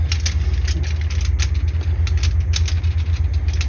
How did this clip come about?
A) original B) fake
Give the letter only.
A